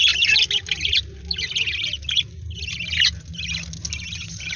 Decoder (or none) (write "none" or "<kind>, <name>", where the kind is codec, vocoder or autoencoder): none